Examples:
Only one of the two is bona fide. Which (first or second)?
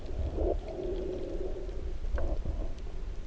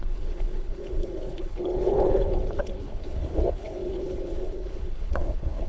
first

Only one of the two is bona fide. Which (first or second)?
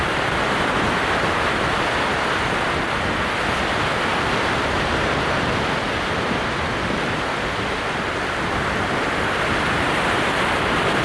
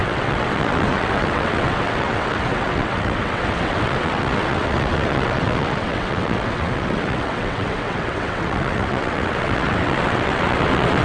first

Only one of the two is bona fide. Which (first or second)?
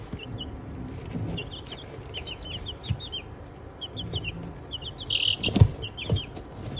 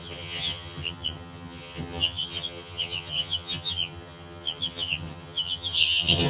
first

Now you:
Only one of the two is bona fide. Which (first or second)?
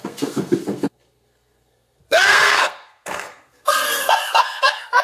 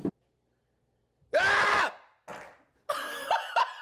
second